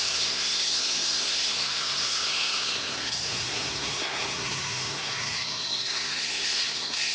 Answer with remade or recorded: remade